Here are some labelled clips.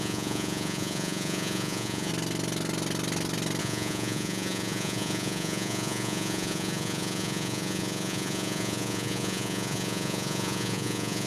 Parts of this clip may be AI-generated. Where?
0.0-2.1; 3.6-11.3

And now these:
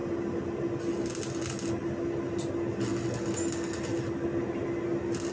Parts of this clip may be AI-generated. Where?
none

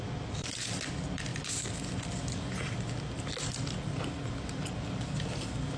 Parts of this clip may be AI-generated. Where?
none